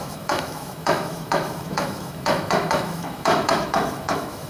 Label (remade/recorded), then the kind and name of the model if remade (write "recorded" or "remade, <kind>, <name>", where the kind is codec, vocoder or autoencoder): remade, autoencoder, DAC-VAE